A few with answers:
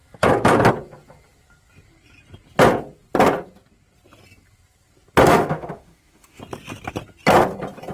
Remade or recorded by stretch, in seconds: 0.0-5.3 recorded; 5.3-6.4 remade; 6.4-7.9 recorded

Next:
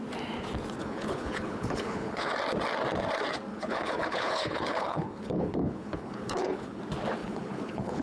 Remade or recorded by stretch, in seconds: 0.0-0.8 recorded; 0.8-2.3 remade; 2.3-3.5 recorded; 3.5-6.8 remade; 6.8-7.2 recorded; 7.2-8.0 remade

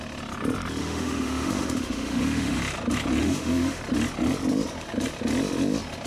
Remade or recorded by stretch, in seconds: 0.0-0.8 recorded; 0.8-2.6 remade; 2.6-3.2 recorded; 3.2-3.8 remade; 3.8-6.1 recorded

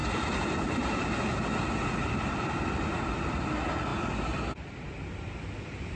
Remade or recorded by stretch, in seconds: 0.0-6.0 recorded

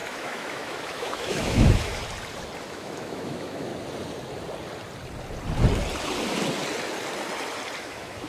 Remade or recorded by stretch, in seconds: 0.0-2.0 remade; 2.0-2.7 recorded; 2.7-3.7 remade; 3.7-7.8 recorded; 7.8-8.3 remade

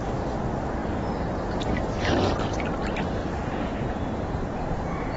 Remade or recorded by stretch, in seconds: 0.0-0.8 recorded; 0.8-1.8 remade; 1.8-3.2 recorded; 3.2-4.8 remade; 4.8-5.2 recorded

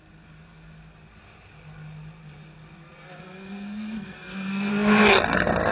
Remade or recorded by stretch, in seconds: 0.0-3.1 recorded; 3.1-4.7 remade; 4.7-5.7 recorded